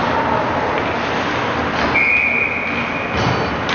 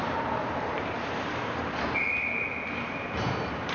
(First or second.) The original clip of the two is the first